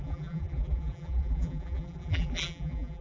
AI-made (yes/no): yes